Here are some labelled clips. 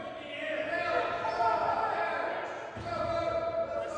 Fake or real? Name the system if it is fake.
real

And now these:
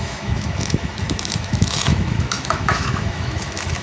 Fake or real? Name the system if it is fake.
fake, autoencoder, DAC-VAE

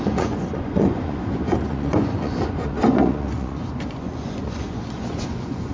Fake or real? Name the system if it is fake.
fake, vocoder, Vocos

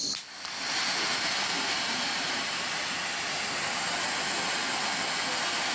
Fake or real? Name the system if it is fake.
real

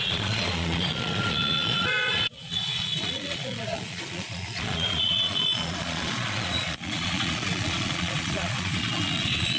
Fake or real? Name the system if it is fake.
fake, vocoder, Vocos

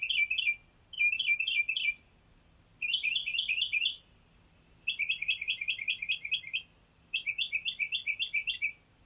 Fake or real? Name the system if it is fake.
real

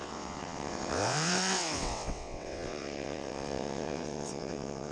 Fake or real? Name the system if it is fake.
fake, vocoder, WaveNeXt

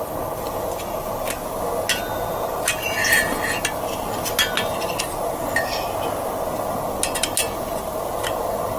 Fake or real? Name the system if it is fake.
real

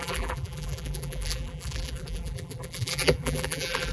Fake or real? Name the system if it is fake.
fake, vocoder, BigVGAN v2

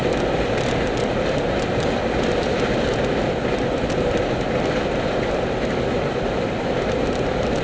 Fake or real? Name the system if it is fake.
real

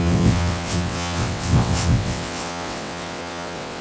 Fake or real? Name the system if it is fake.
fake, vocoder, WaveNeXt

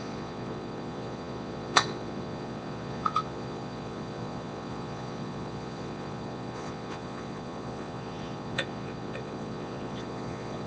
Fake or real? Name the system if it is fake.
fake, vocoder, Vocos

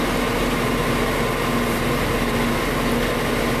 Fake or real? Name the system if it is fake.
real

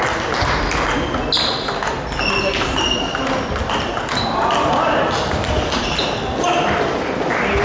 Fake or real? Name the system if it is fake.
real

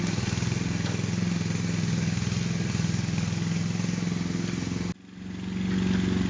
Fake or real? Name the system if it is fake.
real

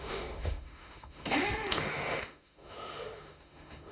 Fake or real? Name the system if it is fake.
fake, autoencoder, DAC-VAE